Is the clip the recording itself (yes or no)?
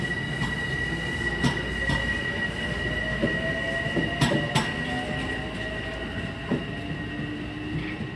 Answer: yes